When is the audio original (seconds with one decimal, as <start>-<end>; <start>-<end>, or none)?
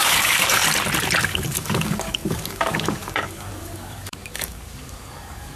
0.6-1.2